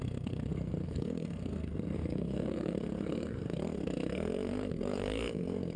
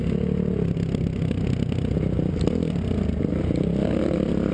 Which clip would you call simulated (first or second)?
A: first